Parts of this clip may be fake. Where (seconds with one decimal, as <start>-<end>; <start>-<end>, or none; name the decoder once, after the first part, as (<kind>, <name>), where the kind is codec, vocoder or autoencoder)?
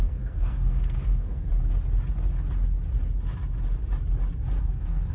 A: 0.0-1.5 (codec, SNAC); 4.6-5.1